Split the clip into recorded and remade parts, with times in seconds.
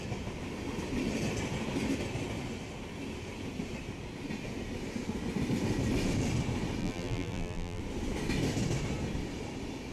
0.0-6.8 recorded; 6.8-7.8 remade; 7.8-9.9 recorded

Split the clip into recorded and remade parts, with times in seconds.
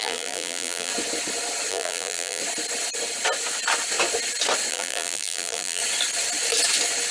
0.0-0.9 remade; 0.9-1.7 recorded; 1.7-2.4 remade; 2.4-4.7 recorded; 4.7-5.8 remade; 5.8-7.1 recorded